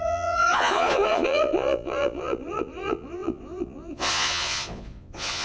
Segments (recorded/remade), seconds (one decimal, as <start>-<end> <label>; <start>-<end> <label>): 0.0-5.4 remade